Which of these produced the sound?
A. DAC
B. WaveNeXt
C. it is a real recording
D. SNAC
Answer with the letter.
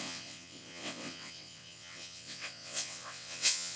B